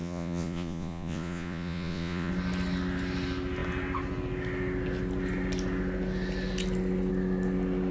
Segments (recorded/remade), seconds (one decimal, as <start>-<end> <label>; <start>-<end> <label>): 0.0-2.3 remade; 2.3-7.9 recorded